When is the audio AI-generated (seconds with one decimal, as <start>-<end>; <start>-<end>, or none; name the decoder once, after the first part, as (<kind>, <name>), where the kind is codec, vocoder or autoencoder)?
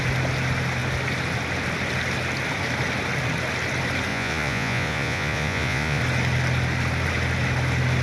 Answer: 4.1-6.0 (vocoder, Vocos)